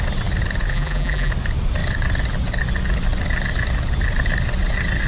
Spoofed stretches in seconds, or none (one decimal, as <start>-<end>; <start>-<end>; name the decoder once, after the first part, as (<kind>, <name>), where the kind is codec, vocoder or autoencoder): 0.7-1.3 (vocoder, BigVGAN v2)

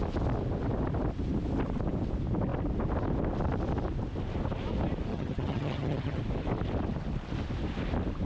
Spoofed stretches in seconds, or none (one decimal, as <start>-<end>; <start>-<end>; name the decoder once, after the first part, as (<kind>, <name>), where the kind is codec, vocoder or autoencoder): 5.1-6.2 (vocoder, HiFi-GAN)

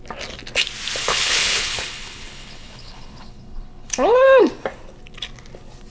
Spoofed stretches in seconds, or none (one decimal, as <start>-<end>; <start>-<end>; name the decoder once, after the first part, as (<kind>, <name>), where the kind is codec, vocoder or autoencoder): 1.0-4.5 (codec, HILCodec)

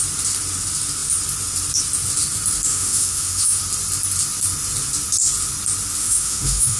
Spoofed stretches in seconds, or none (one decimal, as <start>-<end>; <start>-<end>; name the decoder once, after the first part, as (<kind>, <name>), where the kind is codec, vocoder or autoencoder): 2.7-3.6 (autoencoder, DAC-VAE); 6.0-6.8

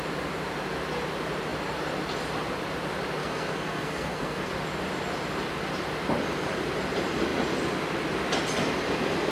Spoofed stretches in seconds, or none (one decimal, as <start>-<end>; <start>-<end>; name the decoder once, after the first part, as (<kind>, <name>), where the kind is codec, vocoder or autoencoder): 3.2-4.5 (codec, SNAC)

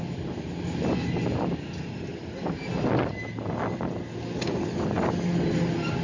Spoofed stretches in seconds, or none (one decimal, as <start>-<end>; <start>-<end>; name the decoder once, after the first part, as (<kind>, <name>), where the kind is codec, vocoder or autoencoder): 2.1-2.7 (vocoder, BigVGAN v2)